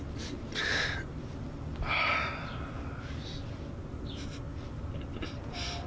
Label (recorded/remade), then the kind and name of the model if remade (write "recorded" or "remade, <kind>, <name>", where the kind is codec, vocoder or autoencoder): recorded